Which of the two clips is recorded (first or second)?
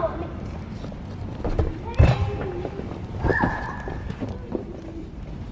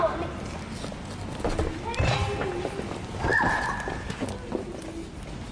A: second